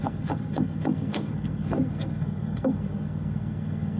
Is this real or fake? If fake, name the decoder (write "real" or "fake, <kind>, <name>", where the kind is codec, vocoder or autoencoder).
fake, codec, SNAC